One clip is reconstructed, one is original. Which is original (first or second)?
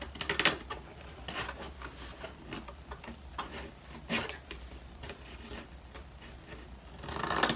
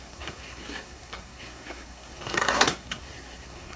first